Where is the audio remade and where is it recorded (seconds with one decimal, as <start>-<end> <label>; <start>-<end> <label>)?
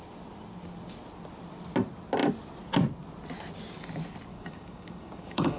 0.0-4.3 recorded; 4.3-5.6 remade